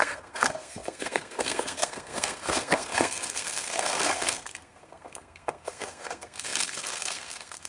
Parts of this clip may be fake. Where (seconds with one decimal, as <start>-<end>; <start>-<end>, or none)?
0.0-7.7